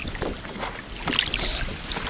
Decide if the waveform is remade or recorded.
recorded